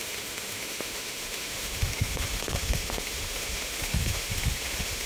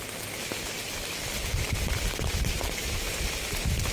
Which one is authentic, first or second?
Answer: second